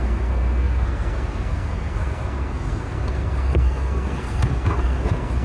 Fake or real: fake